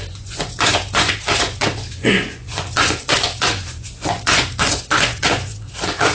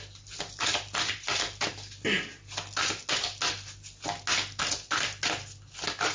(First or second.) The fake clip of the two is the first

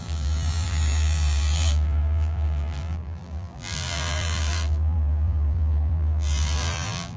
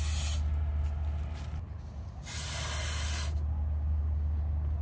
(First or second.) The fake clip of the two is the first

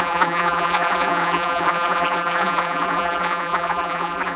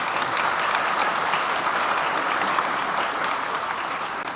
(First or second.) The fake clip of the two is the first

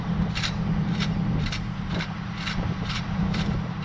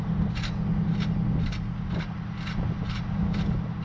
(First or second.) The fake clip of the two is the first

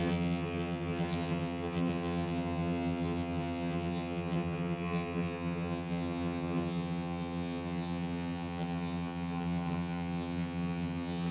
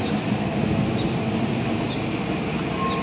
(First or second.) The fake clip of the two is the first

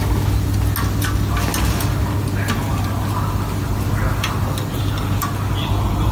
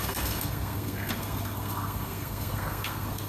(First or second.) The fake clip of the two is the second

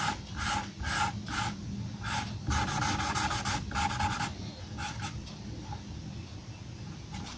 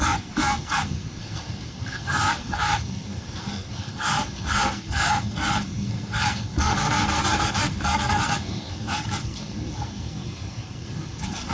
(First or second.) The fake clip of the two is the second